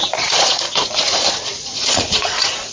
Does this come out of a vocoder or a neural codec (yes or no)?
yes